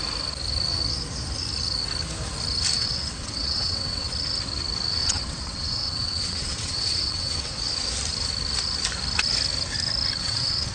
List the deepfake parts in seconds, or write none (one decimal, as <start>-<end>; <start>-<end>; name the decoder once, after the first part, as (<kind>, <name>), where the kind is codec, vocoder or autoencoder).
2.8-4.1 (vocoder, WaveNeXt); 5.0-7.6; 10.2-10.7